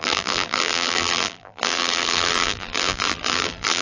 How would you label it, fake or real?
fake